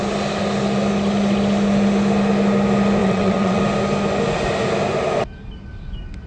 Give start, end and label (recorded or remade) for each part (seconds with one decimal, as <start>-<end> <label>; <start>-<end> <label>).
0.0-3.0 recorded; 3.0-3.6 remade; 3.6-6.3 recorded